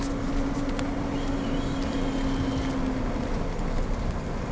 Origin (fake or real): real